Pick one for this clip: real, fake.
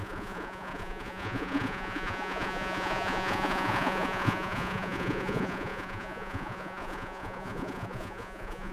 fake